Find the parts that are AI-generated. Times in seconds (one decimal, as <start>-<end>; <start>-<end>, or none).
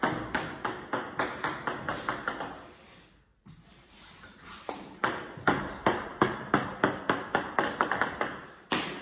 3.3-6.9